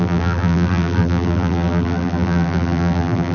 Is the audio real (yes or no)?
no